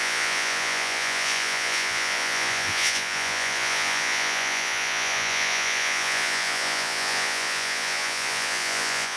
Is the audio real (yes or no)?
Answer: no